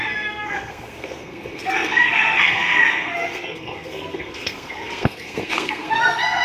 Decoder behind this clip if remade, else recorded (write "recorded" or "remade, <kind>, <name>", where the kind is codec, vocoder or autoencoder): remade, codec, SNAC